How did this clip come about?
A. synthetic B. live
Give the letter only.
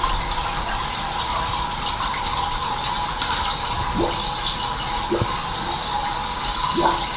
B